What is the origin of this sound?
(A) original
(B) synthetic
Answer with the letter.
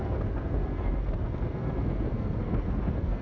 B